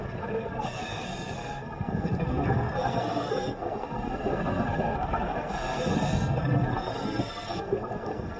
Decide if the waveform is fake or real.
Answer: fake